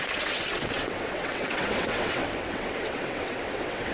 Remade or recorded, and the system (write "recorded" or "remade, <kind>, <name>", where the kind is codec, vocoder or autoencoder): remade, vocoder, WaveNeXt